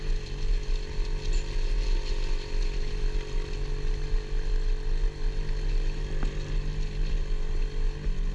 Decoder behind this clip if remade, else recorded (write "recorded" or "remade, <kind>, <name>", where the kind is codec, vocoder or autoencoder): recorded